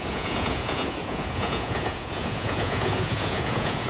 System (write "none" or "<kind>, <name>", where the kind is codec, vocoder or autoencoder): vocoder, Vocos